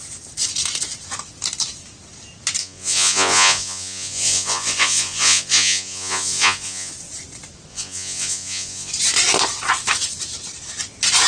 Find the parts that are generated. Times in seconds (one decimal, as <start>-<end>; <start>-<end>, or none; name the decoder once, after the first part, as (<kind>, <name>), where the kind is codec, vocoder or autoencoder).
2.6-6.9 (vocoder, Vocos); 7.7-8.9